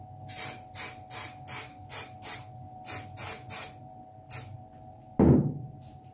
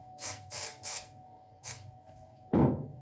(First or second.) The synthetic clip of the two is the second